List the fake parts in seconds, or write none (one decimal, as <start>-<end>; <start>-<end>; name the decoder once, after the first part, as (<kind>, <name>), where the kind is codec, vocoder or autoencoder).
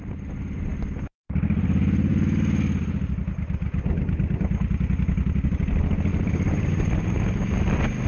none